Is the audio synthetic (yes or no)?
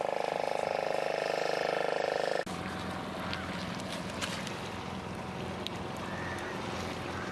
no